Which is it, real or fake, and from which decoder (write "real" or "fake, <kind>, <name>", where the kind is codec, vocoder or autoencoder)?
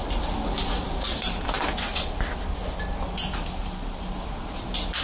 real